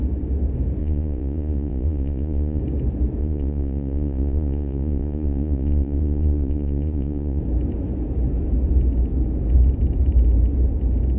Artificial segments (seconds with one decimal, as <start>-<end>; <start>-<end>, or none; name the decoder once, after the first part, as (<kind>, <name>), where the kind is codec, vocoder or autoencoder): 0.8-2.6 (vocoder, Vocos); 3.2-7.4